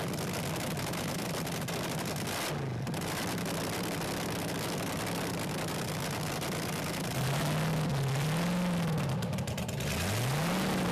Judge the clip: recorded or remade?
recorded